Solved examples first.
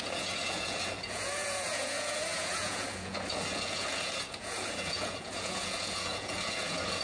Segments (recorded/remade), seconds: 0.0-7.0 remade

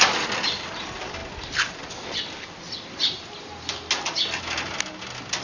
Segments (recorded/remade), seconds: 0.0-5.4 recorded

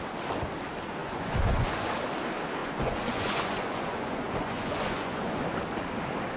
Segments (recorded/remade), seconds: 0.0-1.0 recorded; 1.0-1.9 remade; 1.9-2.6 recorded; 2.6-5.4 remade; 5.4-6.4 recorded